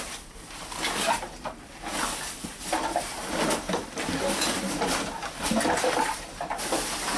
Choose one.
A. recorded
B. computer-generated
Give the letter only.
B